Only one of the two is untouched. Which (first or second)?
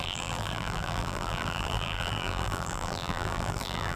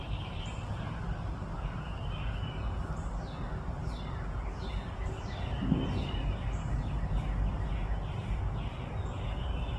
second